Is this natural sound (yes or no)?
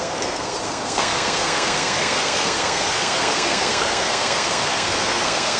no